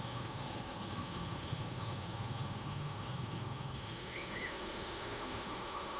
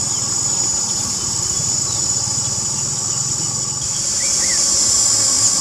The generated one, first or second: first